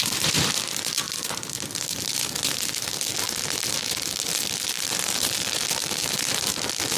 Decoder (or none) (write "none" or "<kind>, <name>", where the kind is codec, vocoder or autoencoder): none